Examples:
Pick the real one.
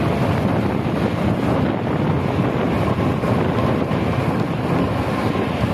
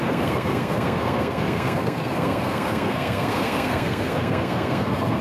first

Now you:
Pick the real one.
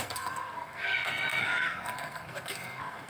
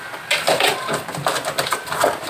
second